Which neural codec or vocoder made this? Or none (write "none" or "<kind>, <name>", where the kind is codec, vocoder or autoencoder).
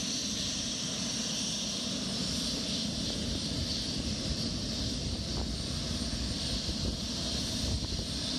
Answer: none